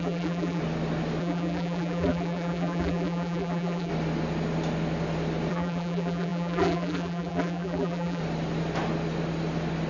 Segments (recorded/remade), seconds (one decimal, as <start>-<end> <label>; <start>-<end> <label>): 0.0-0.6 remade; 0.6-1.2 recorded; 1.2-3.9 remade; 3.9-5.5 recorded; 5.5-8.2 remade; 8.2-9.9 recorded